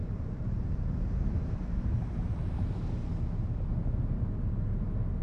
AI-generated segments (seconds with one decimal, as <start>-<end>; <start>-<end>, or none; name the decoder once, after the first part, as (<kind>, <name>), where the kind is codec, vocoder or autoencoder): 0.0-3.1 (vocoder, BigVGAN v2)